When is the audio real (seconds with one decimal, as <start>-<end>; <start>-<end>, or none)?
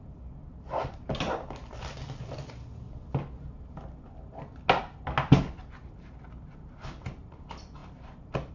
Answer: 0.0-8.5